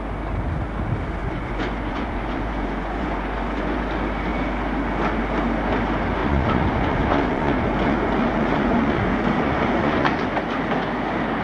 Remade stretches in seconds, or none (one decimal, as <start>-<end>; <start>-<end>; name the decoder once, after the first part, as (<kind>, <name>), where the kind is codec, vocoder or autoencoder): 1.2-3.8 (vocoder, Vocos); 6.2-10.3